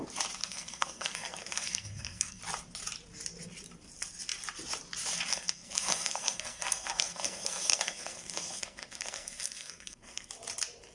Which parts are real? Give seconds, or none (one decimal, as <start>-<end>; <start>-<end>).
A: 0.0-0.4; 2.4-5.3; 10.3-10.9